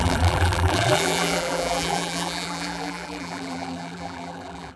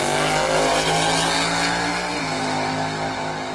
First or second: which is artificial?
first